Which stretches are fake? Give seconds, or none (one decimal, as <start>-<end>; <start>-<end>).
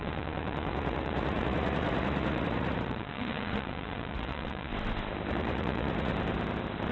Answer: 0.0-4.7; 5.3-6.1